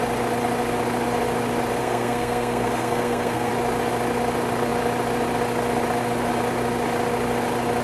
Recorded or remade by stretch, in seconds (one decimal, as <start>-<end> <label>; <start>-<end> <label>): 0.0-1.8 recorded; 1.8-3.5 remade; 3.5-7.8 recorded